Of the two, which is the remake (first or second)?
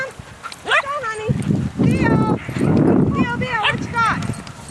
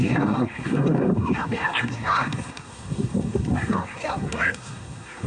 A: second